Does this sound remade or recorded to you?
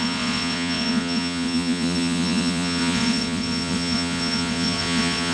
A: remade